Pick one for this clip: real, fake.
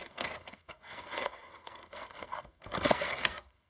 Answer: fake